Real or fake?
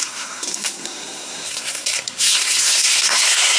fake